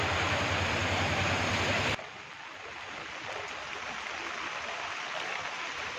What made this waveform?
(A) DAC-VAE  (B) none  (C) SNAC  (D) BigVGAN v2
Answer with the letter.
D